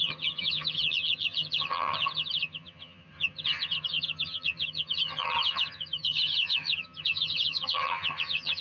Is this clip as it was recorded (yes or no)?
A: no